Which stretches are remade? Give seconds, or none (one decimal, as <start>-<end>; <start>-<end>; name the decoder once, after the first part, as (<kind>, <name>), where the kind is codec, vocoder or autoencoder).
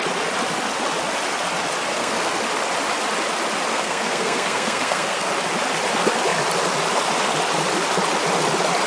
1.9-2.4 (codec, SNAC); 3.7-5.3